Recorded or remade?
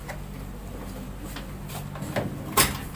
recorded